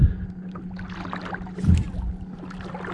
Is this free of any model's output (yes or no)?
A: yes